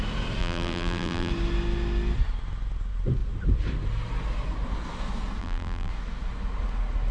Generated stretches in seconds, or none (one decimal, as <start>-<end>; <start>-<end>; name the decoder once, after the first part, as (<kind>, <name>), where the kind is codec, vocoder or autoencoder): 0.4-1.3 (vocoder, BigVGAN v2); 5.4-5.9